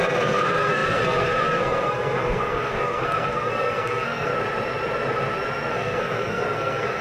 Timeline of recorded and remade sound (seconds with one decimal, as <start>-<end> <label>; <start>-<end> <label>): 0.0-4.3 remade; 4.3-5.7 recorded; 5.7-7.0 remade